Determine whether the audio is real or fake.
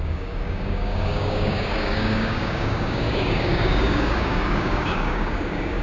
fake